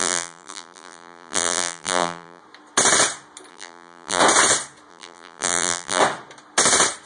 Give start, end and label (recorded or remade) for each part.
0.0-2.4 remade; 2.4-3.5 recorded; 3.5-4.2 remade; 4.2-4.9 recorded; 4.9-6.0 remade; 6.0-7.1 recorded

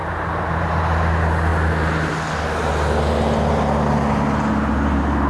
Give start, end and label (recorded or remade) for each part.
0.0-0.8 remade; 0.8-5.3 recorded

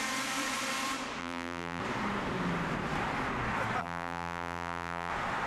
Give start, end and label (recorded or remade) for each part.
0.0-1.2 recorded; 1.2-1.8 remade; 1.8-3.8 recorded; 3.8-5.1 remade; 5.1-5.5 recorded

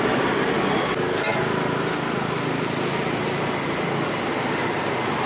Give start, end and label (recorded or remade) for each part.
0.0-5.3 recorded